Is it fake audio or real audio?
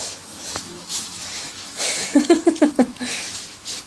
fake